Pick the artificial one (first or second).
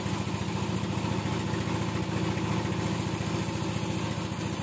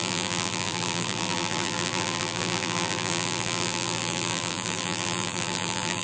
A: second